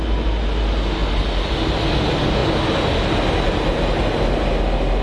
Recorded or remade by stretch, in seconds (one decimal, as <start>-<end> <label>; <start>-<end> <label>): 0.0-5.0 recorded